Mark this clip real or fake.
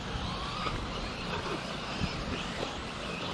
real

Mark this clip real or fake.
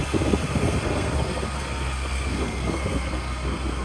fake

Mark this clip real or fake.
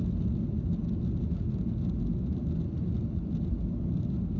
real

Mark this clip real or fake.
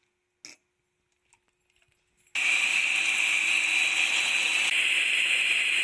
real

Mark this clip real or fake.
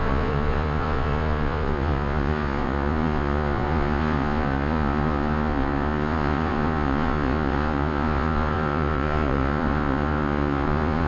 fake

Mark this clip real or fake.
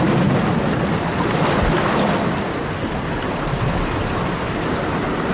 real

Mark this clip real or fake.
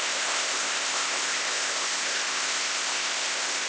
fake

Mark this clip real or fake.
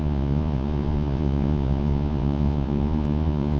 fake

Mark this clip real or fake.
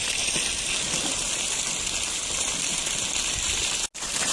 real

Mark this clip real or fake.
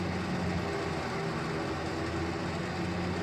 real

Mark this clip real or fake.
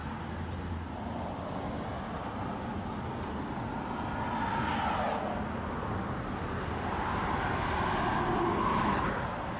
real